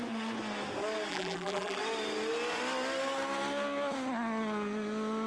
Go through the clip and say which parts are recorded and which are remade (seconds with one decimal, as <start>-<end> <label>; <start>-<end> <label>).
0.0-1.1 recorded; 1.1-1.8 remade; 1.8-5.3 recorded